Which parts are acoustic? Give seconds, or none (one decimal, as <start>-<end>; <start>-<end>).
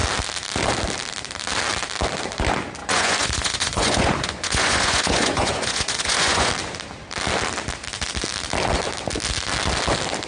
0.0-2.8; 6.5-10.3